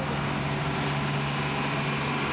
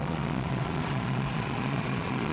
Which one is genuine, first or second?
first